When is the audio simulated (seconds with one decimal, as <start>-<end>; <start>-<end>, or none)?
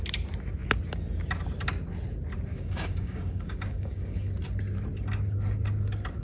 2.5-4.4